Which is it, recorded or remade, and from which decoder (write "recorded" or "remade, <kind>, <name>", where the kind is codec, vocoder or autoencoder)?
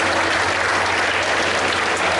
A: recorded